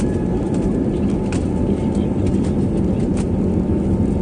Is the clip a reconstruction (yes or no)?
no